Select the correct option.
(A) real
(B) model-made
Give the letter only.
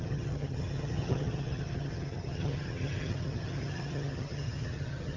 B